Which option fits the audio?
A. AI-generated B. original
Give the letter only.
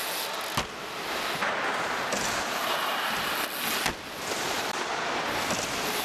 B